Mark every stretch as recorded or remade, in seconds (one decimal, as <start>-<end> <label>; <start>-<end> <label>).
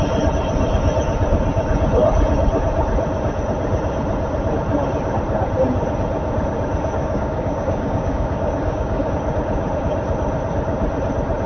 0.0-7.0 recorded; 7.0-9.1 remade; 9.1-11.5 recorded